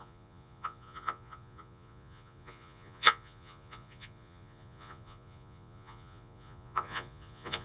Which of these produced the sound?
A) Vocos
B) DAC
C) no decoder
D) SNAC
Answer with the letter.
A